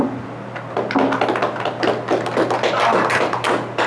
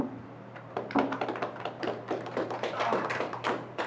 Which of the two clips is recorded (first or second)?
first